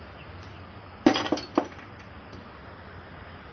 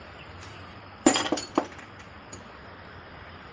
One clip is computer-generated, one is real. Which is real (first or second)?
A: first